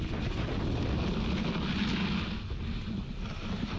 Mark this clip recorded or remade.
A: recorded